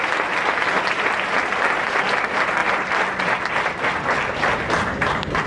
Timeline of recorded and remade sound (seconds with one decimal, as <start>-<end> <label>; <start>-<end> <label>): 0.0-5.5 recorded